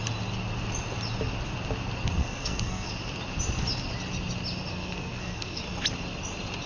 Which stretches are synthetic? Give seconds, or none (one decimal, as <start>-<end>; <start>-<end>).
2.2-2.9; 4.7-5.6